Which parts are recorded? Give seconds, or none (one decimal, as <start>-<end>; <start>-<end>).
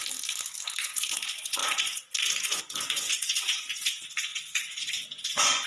0.0-0.8